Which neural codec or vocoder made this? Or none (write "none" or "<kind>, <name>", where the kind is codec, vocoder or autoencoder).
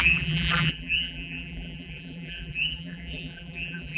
vocoder, BigVGAN v2